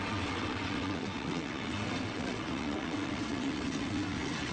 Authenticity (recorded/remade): remade